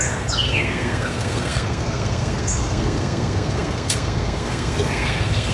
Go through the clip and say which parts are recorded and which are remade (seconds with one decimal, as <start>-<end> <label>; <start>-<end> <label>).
0.0-5.5 remade